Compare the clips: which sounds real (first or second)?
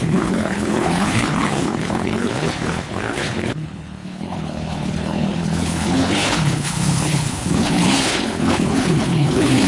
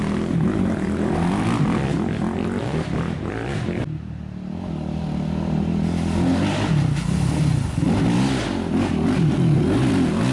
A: second